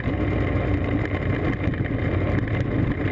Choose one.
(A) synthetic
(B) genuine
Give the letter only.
B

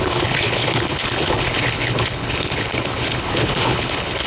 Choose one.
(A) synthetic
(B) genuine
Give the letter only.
A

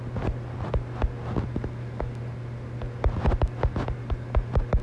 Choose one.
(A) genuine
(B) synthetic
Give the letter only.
A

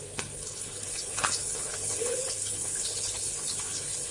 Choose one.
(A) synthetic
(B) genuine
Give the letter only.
A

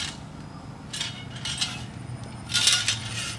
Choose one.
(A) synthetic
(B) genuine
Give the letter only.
B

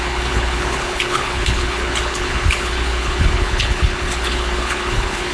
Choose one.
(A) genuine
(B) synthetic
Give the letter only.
B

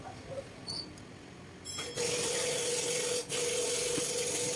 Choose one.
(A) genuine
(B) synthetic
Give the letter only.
A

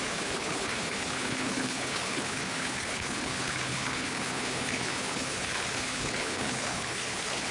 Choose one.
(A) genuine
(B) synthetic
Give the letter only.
B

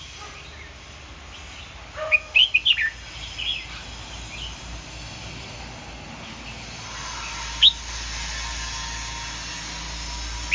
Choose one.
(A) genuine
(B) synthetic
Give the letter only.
A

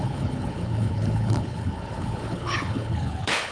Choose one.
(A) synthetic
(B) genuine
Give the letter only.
A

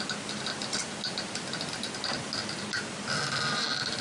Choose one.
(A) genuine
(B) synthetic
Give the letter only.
A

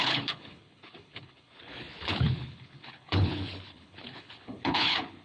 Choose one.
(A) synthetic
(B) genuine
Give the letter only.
A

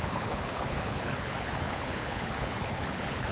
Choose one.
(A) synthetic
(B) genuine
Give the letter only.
A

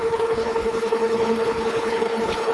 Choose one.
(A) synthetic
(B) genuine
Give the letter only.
A